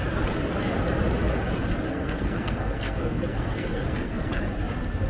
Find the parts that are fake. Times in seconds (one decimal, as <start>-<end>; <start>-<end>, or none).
1.9-4.4